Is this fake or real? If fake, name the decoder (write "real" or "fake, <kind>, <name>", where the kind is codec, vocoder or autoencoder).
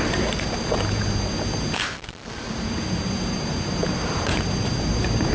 fake, vocoder, BigVGAN v2